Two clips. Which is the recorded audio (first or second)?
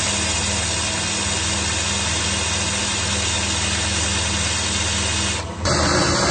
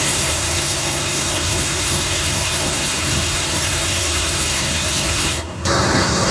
first